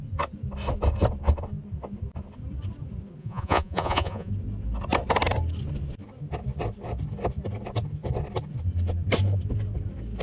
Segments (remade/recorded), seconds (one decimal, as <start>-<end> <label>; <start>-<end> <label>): 0.0-3.2 recorded; 3.2-4.3 remade; 4.3-10.2 recorded